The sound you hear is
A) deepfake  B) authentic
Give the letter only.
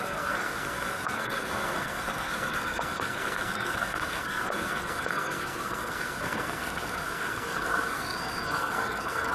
A